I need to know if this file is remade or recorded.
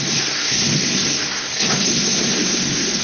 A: remade